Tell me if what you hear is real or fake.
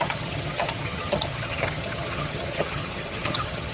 fake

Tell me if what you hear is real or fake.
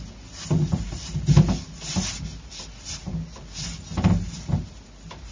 real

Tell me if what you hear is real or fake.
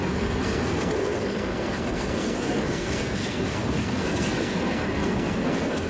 fake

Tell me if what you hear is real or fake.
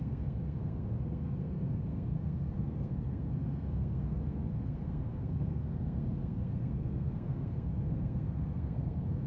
fake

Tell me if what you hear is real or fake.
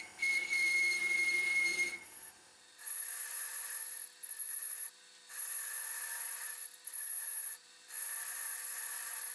fake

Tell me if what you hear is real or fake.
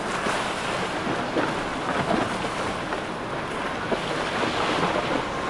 real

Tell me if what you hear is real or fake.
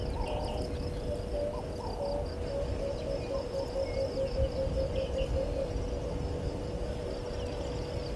real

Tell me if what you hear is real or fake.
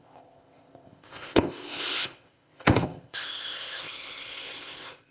fake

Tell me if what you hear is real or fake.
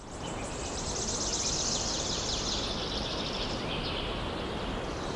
real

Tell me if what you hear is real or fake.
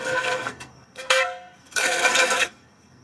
fake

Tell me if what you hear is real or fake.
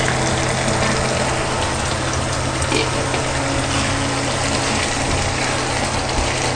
real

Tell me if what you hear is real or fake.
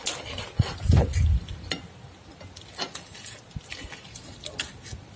real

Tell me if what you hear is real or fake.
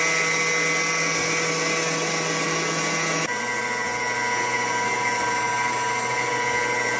real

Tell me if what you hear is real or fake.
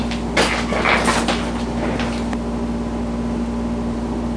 real